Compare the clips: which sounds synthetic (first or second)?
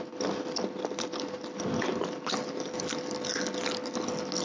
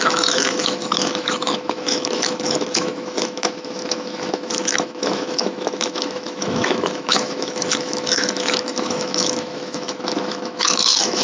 second